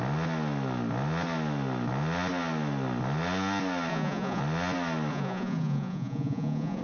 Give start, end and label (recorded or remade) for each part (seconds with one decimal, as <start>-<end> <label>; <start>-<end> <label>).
0.0-3.9 recorded; 3.9-4.4 remade; 4.4-5.1 recorded; 5.1-6.8 remade